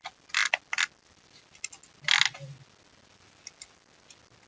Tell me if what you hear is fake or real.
real